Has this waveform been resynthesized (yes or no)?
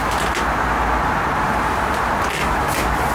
no